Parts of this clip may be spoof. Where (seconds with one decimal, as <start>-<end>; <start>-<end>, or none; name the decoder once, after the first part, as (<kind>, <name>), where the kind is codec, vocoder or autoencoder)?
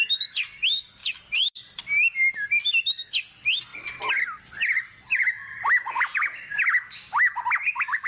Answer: 1.0-1.8 (vocoder, BigVGAN v2)